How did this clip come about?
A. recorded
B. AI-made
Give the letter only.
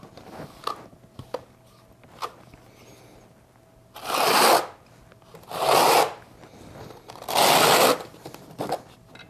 A